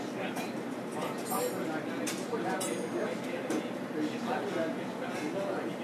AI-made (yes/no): no